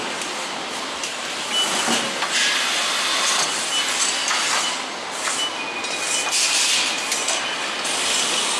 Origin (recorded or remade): recorded